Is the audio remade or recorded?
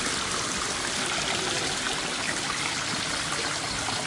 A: recorded